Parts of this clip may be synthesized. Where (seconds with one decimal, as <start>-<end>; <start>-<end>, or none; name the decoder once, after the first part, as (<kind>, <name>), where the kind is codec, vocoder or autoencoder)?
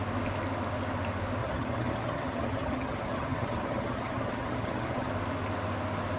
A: 1.4-5.1 (vocoder, HiFi-GAN)